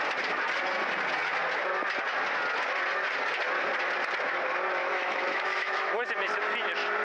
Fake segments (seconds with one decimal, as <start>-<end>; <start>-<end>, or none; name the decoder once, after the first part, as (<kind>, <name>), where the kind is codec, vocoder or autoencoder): 4.8-6.1 (autoencoder, DAC-VAE)